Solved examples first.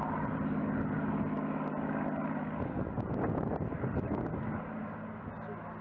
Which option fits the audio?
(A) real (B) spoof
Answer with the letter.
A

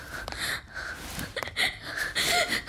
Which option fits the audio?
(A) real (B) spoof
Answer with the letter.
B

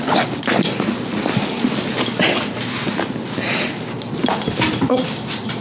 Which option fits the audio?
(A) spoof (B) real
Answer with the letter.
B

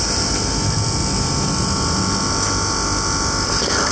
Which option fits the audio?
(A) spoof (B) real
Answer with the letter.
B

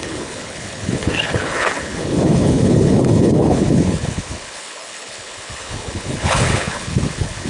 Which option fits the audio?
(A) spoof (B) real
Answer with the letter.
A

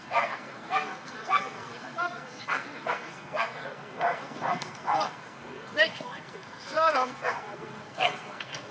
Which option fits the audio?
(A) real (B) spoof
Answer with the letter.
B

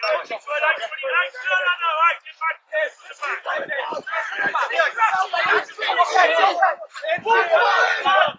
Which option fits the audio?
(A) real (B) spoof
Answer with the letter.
A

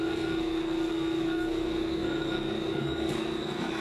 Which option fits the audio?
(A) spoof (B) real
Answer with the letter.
A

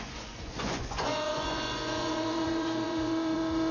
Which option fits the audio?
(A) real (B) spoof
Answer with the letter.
B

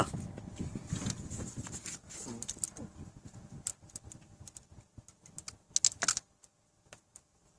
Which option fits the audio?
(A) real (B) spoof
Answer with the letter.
A